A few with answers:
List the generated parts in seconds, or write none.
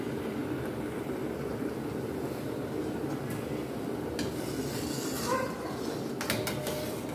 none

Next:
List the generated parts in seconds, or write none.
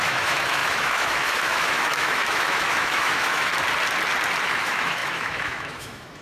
0.0-3.5 (autoencoder, DAC-VAE); 4.4-6.2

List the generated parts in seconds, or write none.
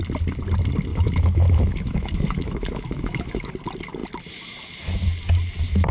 0.9-3.5 (autoencoder, DAC-VAE)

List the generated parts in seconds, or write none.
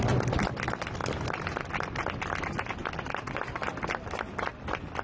none